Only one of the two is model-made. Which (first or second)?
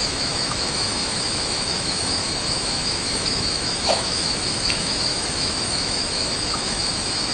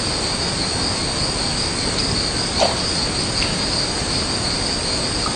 first